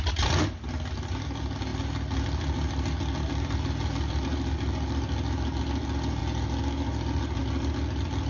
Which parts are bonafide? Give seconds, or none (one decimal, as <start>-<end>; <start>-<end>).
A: 0.0-8.3